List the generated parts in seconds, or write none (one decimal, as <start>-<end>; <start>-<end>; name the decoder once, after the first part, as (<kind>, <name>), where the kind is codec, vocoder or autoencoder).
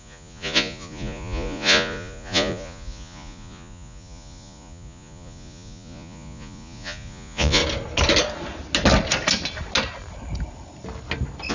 0.0-7.6 (vocoder, Vocos)